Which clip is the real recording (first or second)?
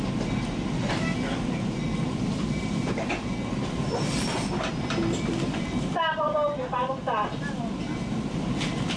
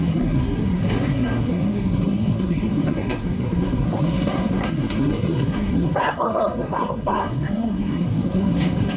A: first